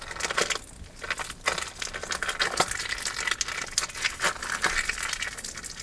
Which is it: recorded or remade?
recorded